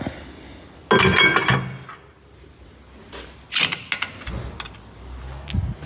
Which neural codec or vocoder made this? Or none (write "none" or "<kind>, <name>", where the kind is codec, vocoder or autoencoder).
none